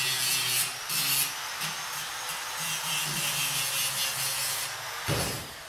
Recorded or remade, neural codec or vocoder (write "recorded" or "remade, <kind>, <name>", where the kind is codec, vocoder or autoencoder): recorded